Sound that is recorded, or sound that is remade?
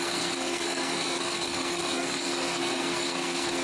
remade